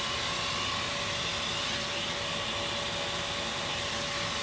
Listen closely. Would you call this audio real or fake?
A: real